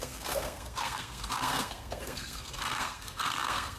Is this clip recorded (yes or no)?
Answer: no